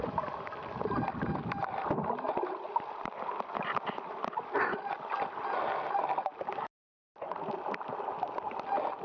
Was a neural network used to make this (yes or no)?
no